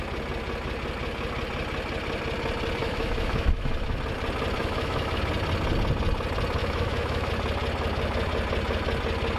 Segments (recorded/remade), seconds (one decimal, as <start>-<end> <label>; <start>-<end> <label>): 0.0-2.8 recorded; 2.8-4.0 remade; 4.0-4.6 recorded; 4.6-5.2 remade; 5.2-6.6 recorded; 6.6-7.3 remade; 7.3-9.4 recorded